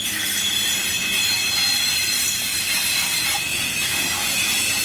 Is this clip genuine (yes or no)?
yes